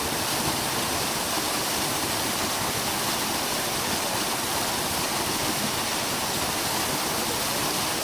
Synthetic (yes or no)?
no